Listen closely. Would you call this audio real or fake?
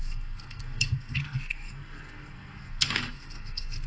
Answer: fake